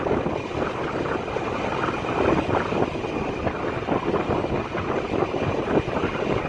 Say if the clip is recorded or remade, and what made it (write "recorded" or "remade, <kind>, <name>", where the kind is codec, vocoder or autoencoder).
recorded